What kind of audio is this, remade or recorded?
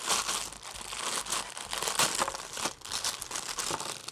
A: recorded